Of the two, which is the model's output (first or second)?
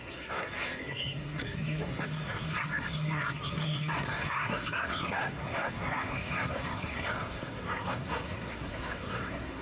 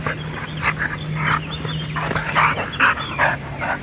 first